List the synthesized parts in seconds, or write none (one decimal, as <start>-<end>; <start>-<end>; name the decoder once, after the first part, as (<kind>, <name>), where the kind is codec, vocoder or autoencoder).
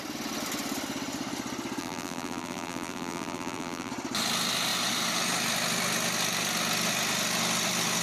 1.8-3.9 (vocoder, BigVGAN v2)